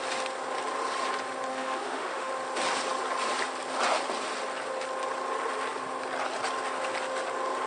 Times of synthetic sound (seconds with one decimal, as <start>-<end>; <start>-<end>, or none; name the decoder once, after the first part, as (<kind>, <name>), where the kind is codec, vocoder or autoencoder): 1.5-2.3 (autoencoder, DAC-VAE)